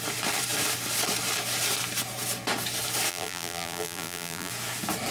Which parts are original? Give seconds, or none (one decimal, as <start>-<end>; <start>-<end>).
0.0-3.1; 4.5-5.1